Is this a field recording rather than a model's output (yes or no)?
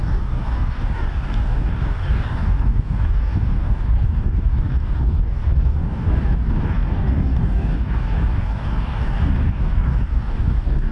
no